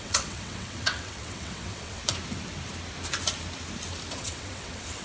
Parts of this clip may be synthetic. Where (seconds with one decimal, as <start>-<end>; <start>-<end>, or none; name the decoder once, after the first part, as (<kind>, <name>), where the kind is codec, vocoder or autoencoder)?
0.0-2.0 (vocoder, WaveNeXt); 4.1-5.0